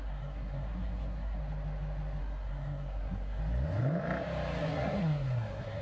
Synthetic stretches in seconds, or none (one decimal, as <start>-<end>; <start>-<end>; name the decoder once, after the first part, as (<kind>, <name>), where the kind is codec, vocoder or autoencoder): 0.0-1.4 (codec, SNAC); 2.2-3.4; 4.6-5.8

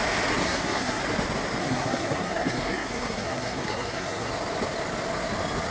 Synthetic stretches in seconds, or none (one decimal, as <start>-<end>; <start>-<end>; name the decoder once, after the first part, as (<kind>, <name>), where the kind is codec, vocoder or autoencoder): 0.4-1.0 (codec, SNAC); 1.6-4.3

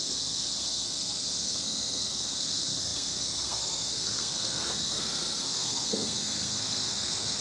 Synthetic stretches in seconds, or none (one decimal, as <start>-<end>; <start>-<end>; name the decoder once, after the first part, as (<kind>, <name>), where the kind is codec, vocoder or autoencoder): 0.0-7.4 (codec, SNAC)

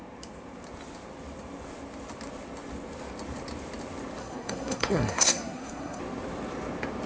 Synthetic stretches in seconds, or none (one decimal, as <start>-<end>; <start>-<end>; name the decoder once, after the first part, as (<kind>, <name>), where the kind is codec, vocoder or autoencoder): 4.2-6.0 (codec, SNAC)